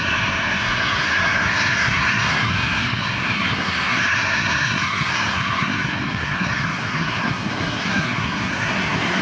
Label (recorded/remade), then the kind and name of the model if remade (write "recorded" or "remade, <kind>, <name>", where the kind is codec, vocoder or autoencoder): remade, codec, SNAC